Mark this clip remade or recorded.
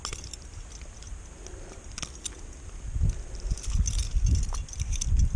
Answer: recorded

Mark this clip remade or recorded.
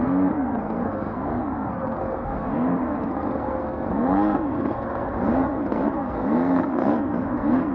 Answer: remade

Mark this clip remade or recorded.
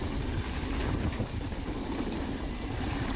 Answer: recorded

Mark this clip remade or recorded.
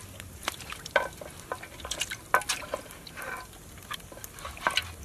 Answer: recorded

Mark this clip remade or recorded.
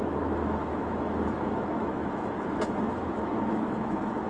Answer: remade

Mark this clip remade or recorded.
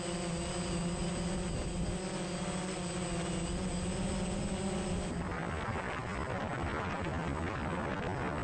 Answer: recorded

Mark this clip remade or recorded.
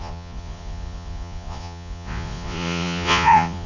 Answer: remade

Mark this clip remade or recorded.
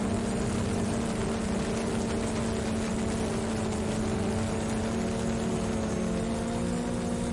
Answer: recorded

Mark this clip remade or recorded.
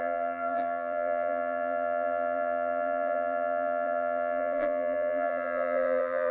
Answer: remade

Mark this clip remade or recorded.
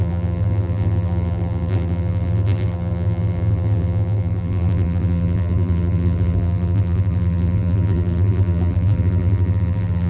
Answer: remade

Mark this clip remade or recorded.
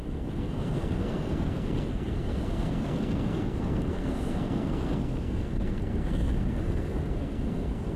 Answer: remade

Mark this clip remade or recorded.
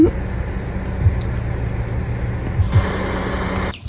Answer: recorded